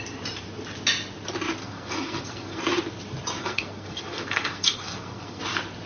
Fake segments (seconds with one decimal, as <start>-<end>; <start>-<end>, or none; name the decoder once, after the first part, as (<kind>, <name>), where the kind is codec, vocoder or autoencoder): 1.6-2.6 (codec, SNAC); 3.4-5.4